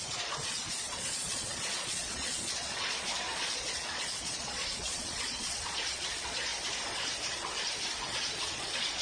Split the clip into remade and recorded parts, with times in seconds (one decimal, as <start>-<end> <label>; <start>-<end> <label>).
0.0-6.5 remade; 6.5-8.0 recorded; 8.0-9.0 remade